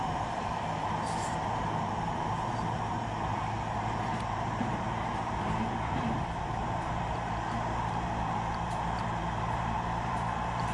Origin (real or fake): fake